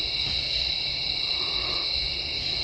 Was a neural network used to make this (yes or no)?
no